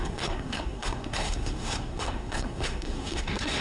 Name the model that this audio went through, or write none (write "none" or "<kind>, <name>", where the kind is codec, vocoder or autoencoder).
codec, SNAC